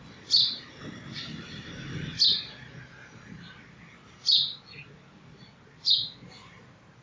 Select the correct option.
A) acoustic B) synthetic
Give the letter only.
A